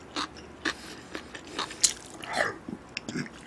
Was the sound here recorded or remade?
recorded